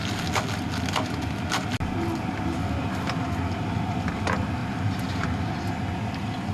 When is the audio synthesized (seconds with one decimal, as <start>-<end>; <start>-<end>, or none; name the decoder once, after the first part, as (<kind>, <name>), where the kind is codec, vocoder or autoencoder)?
none